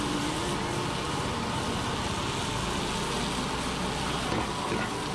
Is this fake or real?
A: real